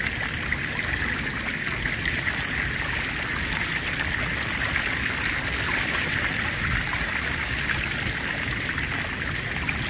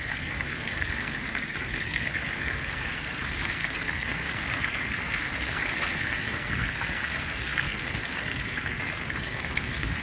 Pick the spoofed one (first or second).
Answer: second